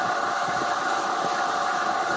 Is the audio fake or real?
real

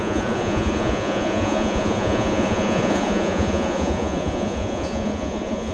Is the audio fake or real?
fake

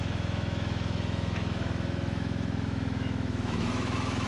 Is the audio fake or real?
fake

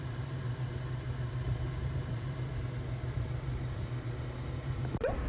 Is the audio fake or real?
fake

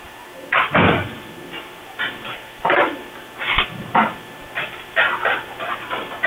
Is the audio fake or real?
real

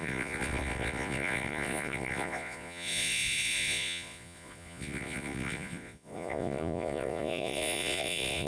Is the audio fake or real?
fake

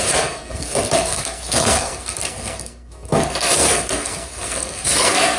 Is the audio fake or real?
fake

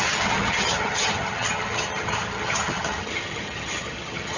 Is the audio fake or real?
fake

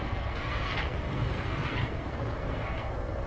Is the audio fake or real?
fake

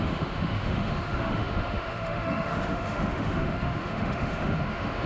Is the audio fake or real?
fake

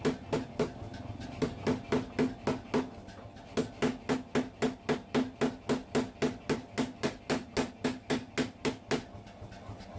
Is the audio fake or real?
real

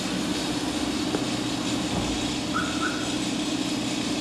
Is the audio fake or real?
real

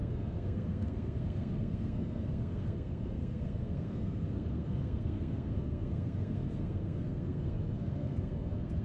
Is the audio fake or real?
fake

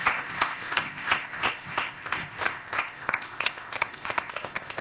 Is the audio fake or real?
fake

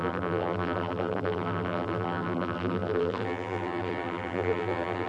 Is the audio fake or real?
fake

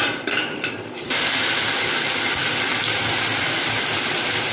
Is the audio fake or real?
fake